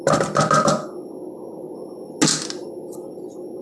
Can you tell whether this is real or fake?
real